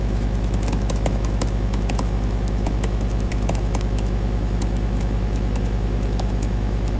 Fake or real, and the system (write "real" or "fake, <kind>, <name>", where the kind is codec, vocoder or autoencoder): fake, autoencoder, DAC-VAE